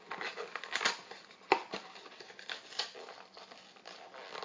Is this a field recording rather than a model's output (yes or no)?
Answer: yes